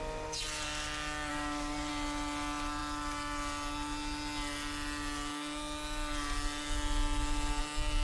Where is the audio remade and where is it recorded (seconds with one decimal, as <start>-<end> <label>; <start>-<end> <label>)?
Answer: 0.0-1.3 recorded; 1.3-1.9 remade; 1.9-8.0 recorded